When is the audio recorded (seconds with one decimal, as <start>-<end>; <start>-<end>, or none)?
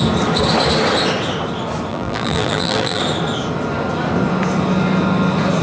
0.0-1.9; 3.0-5.6